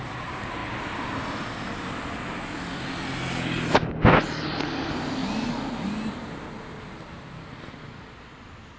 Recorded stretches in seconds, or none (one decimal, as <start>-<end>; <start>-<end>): 0.0-8.8